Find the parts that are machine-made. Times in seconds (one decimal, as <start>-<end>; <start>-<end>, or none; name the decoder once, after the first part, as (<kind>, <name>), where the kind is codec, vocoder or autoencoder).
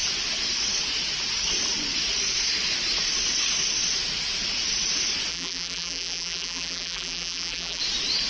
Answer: 5.3-7.8 (vocoder, BigVGAN v2)